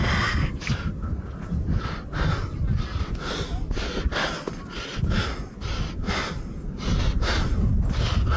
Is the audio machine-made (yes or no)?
no